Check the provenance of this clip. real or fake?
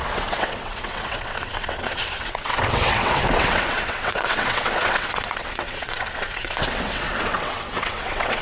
fake